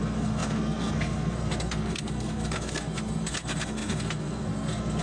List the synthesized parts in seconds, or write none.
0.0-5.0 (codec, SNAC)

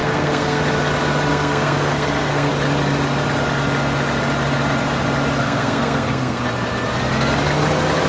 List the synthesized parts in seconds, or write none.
0.0-0.6 (codec, SNAC); 1.3-2.5; 5.4-6.4

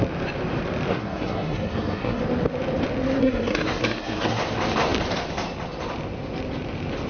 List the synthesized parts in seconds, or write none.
0.9-2.2 (codec, SNAC); 3.2-4.4

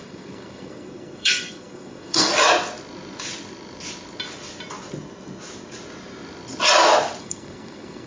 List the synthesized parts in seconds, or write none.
0.0-2.3 (codec, SNAC); 7.2-8.1

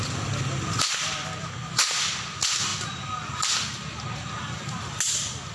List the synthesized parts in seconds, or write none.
none

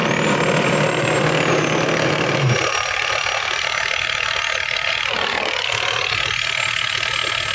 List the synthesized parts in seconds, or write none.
none

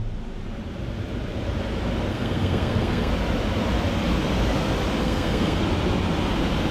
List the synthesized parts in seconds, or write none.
2.1-3.1 (codec, SNAC); 5.0-5.6

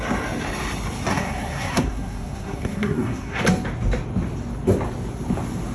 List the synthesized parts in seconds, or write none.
1.1-3.4 (codec, SNAC)